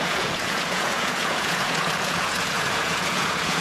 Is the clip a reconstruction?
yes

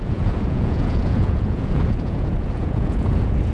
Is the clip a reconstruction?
yes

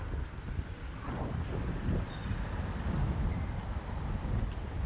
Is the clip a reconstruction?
no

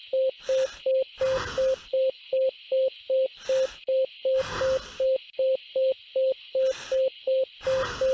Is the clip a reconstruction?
no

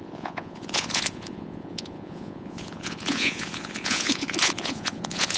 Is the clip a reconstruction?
yes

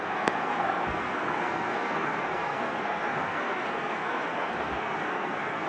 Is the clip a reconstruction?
yes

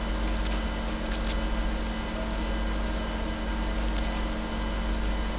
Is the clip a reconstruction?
no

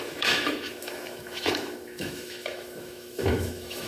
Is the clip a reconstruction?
yes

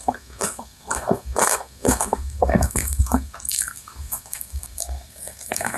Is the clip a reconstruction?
yes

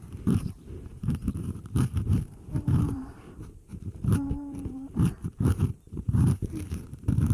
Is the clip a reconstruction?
yes